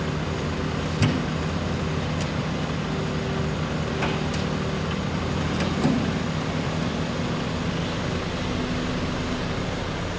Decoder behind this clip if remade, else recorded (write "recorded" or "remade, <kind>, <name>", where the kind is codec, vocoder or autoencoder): recorded